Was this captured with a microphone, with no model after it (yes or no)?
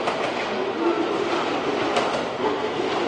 yes